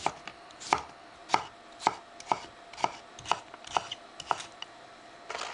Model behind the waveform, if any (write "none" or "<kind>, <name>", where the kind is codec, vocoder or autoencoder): none